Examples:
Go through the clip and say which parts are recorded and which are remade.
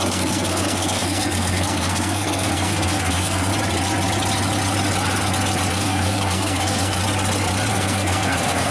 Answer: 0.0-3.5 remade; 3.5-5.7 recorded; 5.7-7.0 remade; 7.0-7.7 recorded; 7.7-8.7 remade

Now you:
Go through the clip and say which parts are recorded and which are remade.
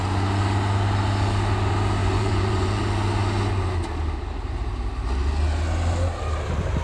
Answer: 0.0-2.0 recorded; 2.0-2.8 remade; 2.8-6.8 recorded